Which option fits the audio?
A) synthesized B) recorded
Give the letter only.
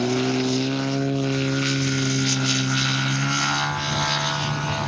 B